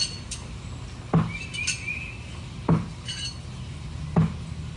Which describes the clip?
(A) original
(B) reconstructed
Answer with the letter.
A